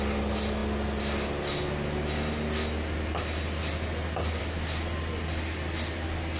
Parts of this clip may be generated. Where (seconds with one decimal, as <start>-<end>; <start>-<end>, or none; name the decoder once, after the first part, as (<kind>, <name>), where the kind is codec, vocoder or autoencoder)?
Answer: none